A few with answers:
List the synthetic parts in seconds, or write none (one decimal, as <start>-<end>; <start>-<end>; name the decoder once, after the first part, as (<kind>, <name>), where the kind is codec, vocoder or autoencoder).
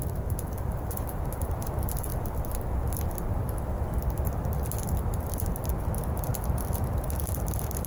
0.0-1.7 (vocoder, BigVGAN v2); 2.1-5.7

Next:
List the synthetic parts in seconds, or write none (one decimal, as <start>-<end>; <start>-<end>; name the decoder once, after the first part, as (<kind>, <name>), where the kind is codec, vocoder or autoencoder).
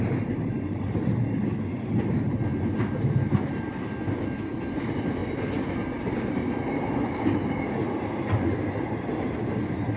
none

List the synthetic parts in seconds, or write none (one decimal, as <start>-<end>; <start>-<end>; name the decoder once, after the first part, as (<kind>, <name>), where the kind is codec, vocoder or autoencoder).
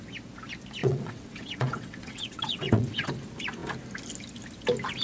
0.8-3.1 (vocoder, WaveNeXt)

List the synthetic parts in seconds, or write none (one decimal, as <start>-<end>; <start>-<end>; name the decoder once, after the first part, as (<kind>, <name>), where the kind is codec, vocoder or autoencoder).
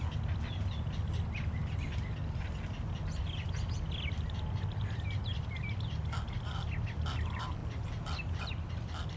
none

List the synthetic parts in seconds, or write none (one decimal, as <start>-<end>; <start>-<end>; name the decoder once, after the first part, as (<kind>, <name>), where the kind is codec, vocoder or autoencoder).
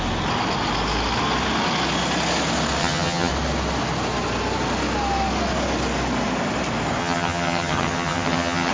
2.8-3.3 (vocoder, HiFi-GAN); 7.0-8.7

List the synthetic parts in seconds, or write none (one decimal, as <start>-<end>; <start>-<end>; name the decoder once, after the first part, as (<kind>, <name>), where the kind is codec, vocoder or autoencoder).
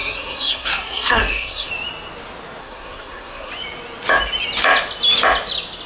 0.0-1.7 (codec, SNAC); 2.6-3.5